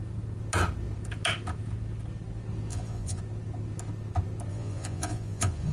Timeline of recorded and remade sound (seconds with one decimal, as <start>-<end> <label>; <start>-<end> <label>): 0.0-2.7 recorded; 2.7-3.2 remade; 3.2-4.5 recorded; 4.5-5.7 remade